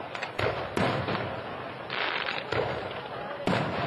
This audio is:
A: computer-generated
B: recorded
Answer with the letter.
B